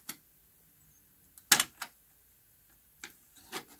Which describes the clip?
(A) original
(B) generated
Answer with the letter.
A